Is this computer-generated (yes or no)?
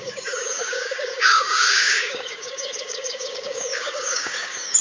yes